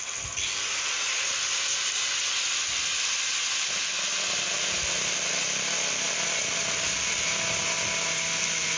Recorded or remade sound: recorded